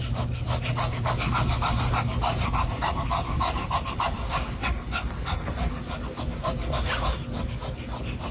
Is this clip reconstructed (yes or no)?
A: yes